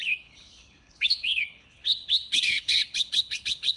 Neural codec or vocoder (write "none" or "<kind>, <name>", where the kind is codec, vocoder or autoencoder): codec, HILCodec